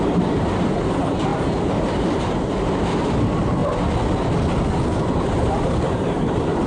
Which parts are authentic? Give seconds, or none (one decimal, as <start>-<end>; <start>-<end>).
3.6-5.1